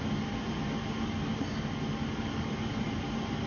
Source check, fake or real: real